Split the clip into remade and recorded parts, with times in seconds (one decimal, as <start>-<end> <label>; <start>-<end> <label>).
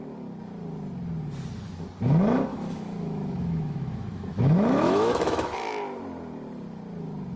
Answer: 0.0-2.5 recorded; 2.5-5.7 remade; 5.7-7.4 recorded